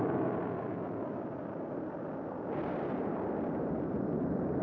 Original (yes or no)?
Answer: yes